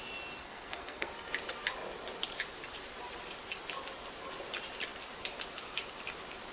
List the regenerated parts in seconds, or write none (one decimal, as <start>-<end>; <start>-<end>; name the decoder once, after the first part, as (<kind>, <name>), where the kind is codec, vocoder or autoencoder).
0.4-1.1 (codec, SNAC)